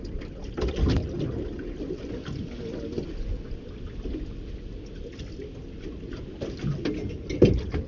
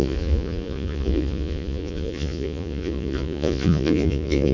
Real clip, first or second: first